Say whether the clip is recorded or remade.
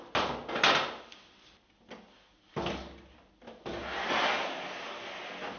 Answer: recorded